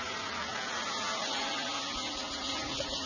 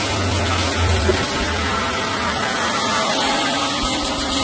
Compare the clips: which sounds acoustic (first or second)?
first